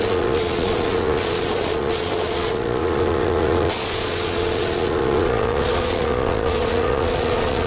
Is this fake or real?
fake